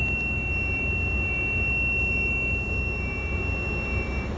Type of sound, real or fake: real